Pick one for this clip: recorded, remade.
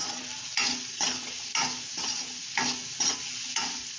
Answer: recorded